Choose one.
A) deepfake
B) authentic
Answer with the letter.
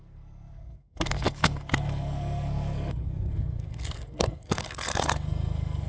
A